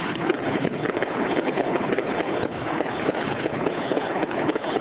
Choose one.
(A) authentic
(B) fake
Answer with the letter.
B